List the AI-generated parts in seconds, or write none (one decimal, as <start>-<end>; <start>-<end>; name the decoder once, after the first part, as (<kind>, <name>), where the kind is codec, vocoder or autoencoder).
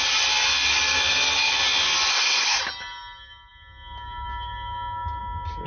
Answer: 2.1-2.6 (codec, SNAC)